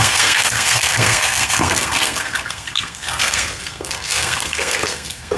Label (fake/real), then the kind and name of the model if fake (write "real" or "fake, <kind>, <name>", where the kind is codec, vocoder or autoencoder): fake, codec, SNAC